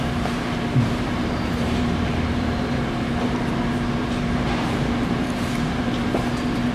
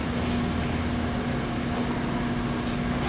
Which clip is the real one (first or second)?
second